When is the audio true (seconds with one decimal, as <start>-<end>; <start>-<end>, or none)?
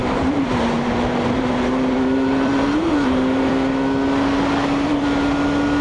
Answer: 3.5-5.8